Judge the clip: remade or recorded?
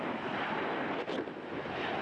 recorded